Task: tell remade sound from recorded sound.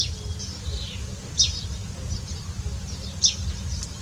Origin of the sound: recorded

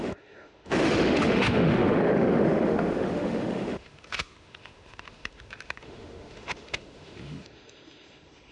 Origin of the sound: remade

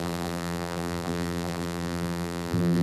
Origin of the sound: remade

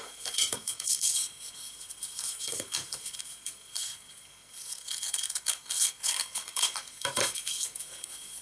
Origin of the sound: remade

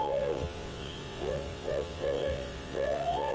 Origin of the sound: remade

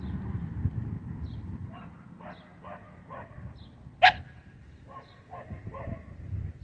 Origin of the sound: recorded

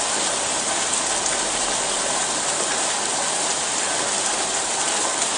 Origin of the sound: recorded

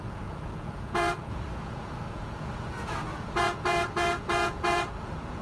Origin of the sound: remade